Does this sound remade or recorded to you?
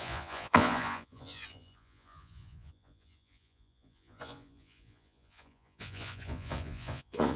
remade